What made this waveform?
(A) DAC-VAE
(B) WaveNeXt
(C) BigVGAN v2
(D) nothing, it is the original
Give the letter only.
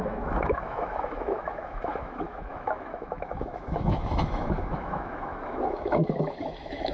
A